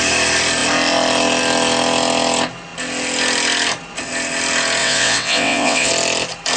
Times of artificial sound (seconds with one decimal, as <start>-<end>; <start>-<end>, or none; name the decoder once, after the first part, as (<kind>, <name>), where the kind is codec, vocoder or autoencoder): 4.8-5.9 (vocoder, WaveNeXt)